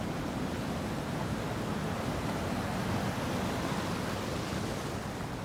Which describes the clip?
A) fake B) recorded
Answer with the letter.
B